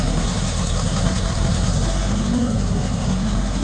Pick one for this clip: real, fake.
fake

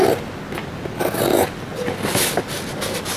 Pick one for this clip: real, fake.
real